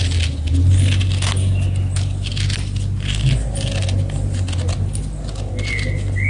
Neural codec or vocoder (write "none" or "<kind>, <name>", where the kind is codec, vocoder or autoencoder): none